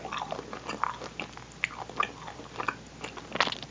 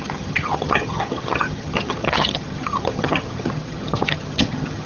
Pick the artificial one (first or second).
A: second